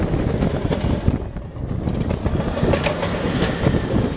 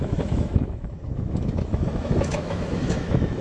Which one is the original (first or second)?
first